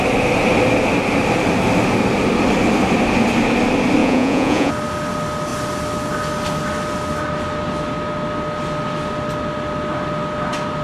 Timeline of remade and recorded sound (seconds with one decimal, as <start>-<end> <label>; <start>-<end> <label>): 0.0-4.0 recorded; 4.0-4.7 remade; 4.7-10.8 recorded